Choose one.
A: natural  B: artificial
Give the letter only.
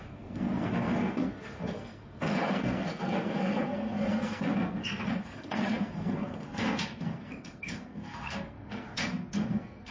B